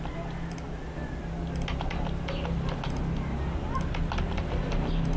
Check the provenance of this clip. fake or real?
real